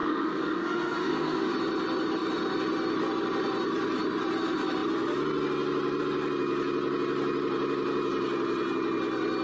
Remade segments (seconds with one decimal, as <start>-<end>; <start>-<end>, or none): 0.0-1.5